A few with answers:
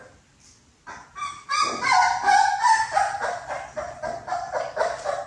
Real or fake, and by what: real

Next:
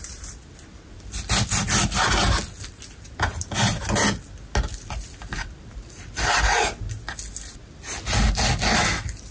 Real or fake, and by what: real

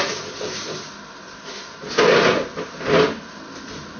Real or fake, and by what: real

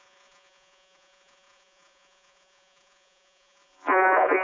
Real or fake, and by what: fake, vocoder, Vocos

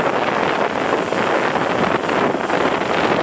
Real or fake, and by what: real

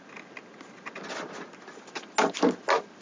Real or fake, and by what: real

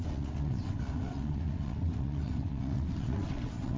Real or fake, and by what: fake, vocoder, WaveNeXt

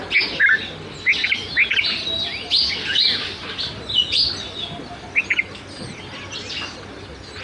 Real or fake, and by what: real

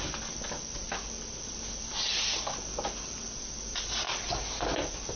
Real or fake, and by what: real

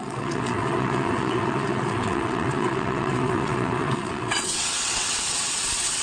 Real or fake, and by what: fake, vocoder, WaveNeXt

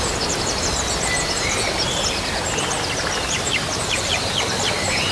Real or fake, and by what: real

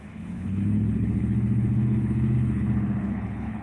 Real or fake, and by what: fake, codec, HILCodec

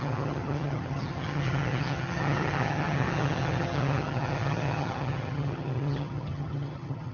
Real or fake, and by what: fake, vocoder, HiFi-GAN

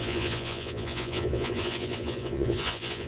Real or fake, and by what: fake, vocoder, Vocos